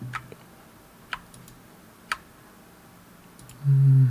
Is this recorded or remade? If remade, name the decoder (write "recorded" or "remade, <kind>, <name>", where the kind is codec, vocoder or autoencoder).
recorded